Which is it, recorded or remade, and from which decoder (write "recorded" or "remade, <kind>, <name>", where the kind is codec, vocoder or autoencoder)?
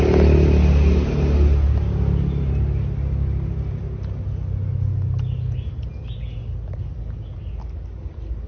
recorded